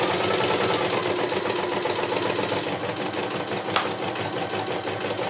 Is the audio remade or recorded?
recorded